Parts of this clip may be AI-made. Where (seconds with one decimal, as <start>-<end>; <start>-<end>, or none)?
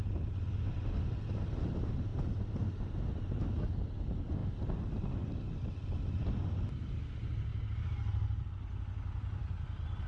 none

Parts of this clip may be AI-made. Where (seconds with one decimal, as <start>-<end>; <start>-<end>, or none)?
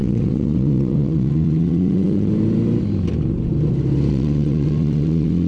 0.0-2.3; 4.1-5.5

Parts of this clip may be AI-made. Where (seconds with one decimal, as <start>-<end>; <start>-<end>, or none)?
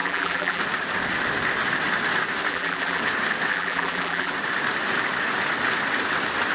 0.0-0.6; 2.5-3.0; 3.5-4.3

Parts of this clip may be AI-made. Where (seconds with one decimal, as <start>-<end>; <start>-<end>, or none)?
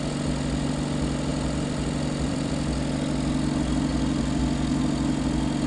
1.3-2.5; 3.9-4.4